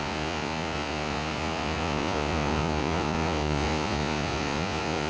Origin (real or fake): fake